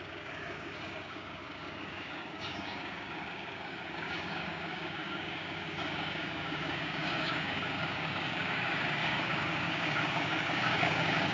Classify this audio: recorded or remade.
remade